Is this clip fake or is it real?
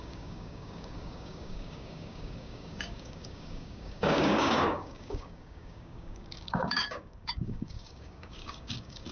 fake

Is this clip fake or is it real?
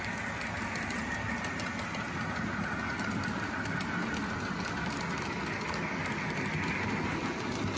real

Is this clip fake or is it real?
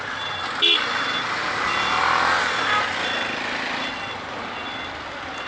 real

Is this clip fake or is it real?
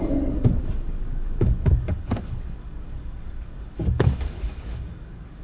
fake